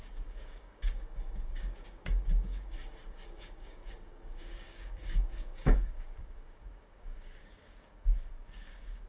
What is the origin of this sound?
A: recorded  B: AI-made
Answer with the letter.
B